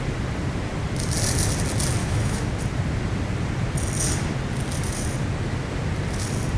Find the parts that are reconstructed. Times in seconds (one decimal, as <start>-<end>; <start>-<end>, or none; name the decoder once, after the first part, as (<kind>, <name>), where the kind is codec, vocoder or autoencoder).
2.0-2.5 (autoencoder, DAC-VAE)

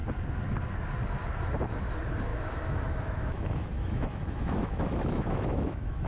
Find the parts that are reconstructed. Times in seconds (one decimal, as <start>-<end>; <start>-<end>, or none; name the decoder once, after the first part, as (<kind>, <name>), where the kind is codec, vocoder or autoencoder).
2.3-6.1 (autoencoder, DAC-VAE)

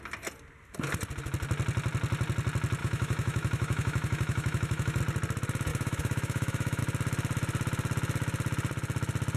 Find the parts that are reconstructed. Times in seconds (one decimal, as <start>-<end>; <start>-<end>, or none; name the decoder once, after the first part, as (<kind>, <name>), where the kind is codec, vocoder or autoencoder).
2.8-5.0 (autoencoder, DAC-VAE); 5.7-6.8

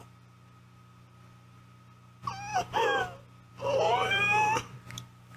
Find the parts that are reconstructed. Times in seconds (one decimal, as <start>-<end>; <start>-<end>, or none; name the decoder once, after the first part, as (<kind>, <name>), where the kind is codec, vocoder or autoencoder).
none

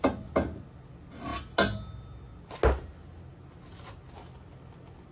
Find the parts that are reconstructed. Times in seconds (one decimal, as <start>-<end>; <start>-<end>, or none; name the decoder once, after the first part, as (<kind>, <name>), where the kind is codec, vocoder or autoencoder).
none